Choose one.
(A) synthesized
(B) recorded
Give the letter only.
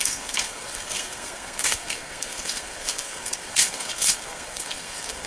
A